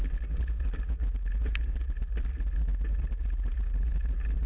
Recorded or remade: recorded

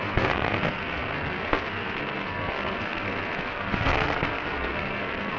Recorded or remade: remade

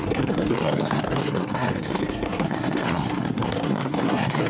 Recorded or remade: remade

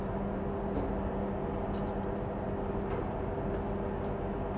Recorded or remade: recorded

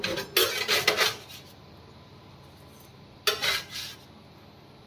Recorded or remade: recorded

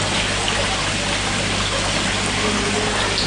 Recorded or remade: recorded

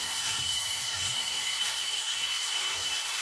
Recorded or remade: remade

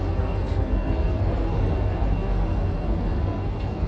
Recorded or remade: remade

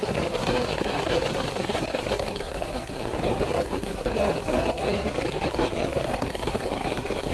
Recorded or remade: remade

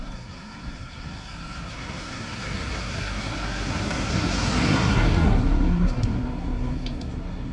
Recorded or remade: remade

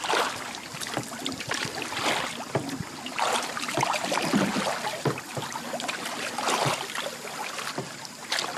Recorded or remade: recorded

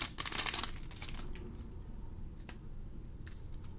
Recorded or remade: recorded